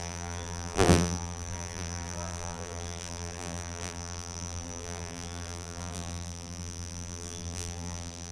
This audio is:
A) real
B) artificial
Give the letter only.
B